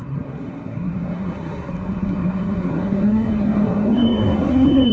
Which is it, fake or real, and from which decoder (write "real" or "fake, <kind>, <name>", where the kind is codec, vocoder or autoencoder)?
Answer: fake, codec, SNAC